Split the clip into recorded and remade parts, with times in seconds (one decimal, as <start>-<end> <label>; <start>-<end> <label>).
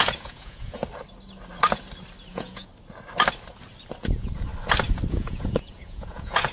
0.0-0.8 remade; 0.8-2.3 recorded; 2.3-2.7 remade; 2.7-4.0 recorded; 4.0-4.5 remade; 4.5-5.1 recorded; 5.1-6.5 remade